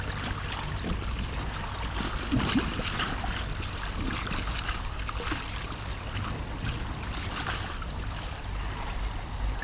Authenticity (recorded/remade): recorded